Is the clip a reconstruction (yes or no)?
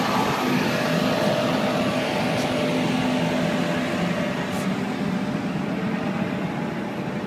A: no